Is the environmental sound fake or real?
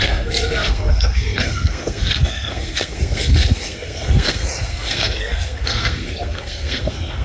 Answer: fake